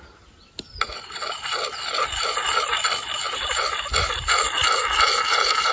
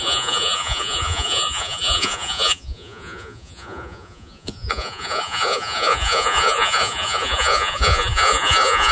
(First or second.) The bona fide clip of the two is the first